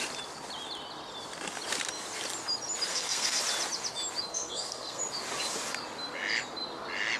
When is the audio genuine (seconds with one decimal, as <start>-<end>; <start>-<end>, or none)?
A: 0.0-2.9; 3.4-4.3; 5.0-7.2